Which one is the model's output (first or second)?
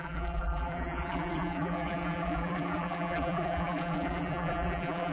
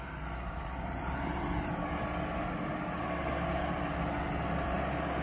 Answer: first